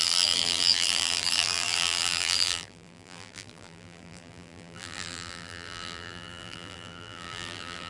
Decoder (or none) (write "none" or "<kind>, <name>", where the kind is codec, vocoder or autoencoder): vocoder, BigVGAN v2